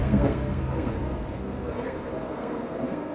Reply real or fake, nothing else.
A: fake